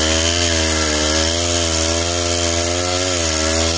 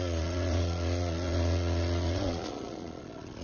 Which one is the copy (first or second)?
second